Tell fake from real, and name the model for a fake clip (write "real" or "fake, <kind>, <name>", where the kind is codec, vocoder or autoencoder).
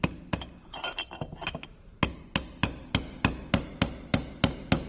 real